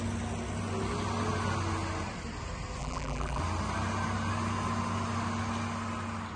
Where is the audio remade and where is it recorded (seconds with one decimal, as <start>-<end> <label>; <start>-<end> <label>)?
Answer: 0.0-2.8 recorded; 2.8-3.4 remade; 3.4-6.4 recorded